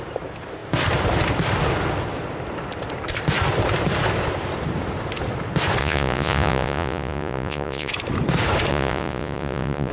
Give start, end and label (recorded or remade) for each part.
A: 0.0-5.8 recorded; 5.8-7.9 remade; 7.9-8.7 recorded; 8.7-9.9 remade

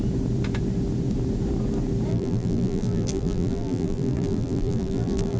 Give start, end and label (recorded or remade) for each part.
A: 0.0-2.1 recorded; 2.1-5.4 remade